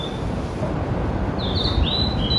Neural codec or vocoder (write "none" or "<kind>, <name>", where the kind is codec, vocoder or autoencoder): none